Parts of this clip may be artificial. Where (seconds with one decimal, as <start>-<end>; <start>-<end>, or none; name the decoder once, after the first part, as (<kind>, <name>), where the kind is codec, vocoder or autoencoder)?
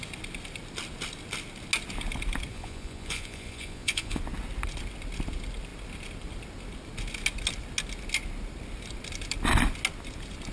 2.5-4.2 (vocoder, Vocos)